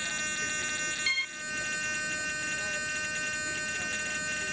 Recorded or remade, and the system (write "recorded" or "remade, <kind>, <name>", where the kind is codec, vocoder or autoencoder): recorded